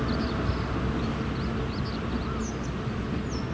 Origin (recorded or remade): recorded